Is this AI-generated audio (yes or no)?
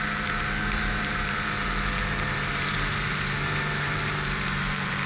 yes